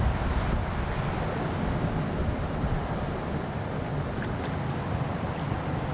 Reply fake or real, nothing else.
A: real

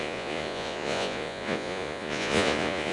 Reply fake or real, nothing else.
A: fake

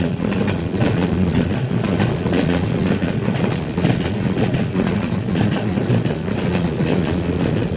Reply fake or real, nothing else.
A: fake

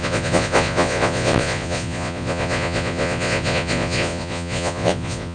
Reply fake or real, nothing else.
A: fake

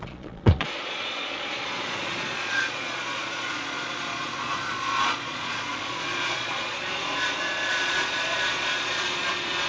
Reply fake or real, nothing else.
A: fake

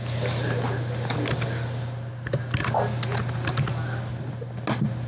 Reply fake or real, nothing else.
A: real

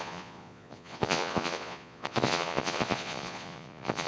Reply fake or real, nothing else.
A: fake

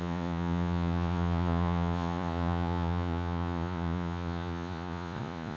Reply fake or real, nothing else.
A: fake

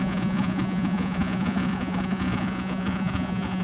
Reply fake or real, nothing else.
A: fake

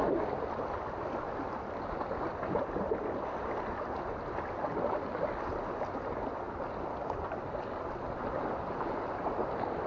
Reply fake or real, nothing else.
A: real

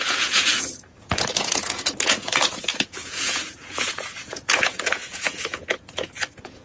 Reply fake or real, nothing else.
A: fake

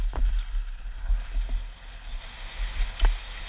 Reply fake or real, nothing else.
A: real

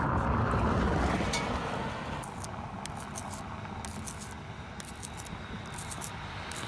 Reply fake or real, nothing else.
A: real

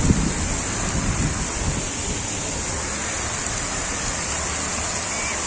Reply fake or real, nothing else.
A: real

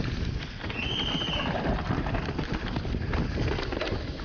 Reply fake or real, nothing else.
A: real